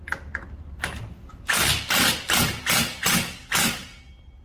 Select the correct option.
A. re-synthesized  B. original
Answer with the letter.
B